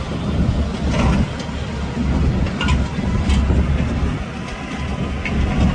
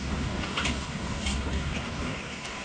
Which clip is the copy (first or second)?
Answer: second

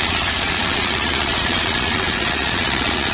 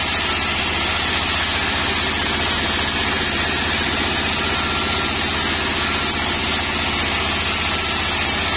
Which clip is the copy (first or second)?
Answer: first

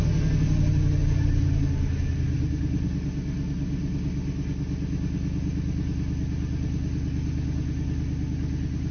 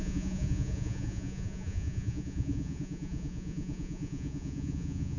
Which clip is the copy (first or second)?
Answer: second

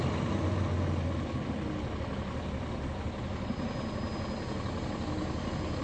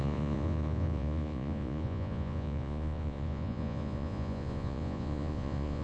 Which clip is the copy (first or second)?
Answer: second